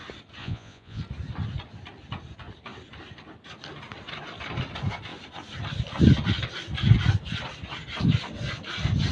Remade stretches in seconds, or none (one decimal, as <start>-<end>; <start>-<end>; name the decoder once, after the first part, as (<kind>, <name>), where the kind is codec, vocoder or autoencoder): 0.4-1.0 (vocoder, Vocos)